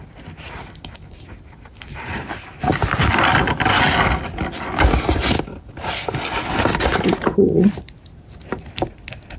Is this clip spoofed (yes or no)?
no